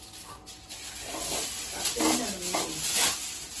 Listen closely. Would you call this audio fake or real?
real